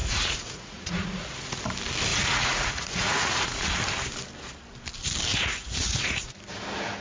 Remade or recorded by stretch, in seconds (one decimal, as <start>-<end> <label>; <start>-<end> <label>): 0.0-1.6 remade; 1.6-2.1 recorded; 2.1-3.7 remade; 3.7-5.3 recorded; 5.3-6.4 remade; 6.4-7.0 recorded